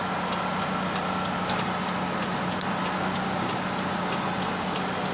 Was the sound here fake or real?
real